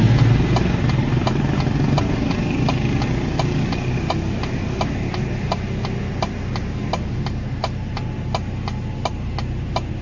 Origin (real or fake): real